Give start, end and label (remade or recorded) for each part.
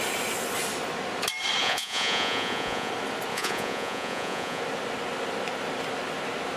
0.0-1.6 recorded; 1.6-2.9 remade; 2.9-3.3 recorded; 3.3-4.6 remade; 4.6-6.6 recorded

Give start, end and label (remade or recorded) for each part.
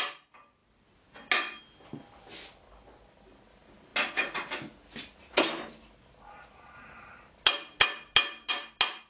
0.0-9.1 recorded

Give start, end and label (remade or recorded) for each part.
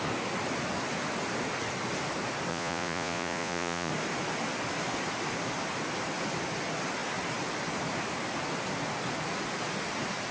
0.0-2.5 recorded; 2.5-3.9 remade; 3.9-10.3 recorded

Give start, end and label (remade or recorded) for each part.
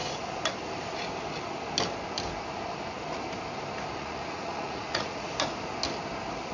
0.0-3.9 recorded; 3.9-5.3 remade; 5.3-6.5 recorded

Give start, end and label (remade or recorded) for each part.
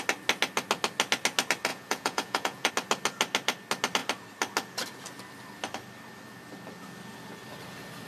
0.0-1.7 recorded; 1.7-2.7 remade; 2.7-8.1 recorded